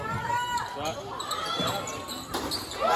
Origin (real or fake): real